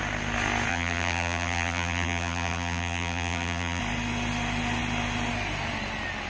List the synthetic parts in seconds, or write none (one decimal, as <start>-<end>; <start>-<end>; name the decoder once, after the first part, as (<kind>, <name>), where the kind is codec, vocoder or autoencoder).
0.7-3.8 (vocoder, BigVGAN v2)